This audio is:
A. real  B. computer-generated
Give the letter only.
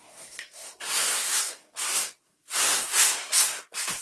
B